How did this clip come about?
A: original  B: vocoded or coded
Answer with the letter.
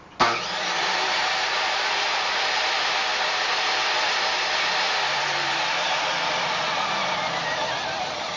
A